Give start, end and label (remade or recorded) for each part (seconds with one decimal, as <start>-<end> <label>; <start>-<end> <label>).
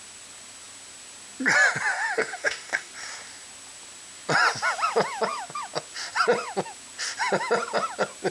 0.0-1.9 recorded; 1.9-2.9 remade; 2.9-8.3 recorded